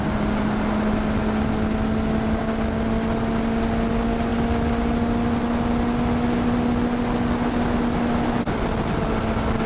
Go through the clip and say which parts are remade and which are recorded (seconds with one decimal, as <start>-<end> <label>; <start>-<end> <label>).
0.0-9.7 recorded